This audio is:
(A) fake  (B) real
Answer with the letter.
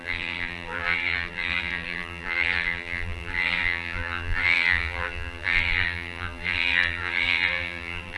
A